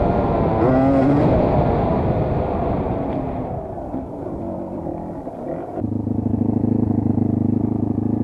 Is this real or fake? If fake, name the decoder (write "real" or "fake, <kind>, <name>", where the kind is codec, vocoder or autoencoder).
real